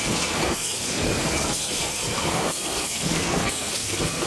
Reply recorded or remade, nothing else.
remade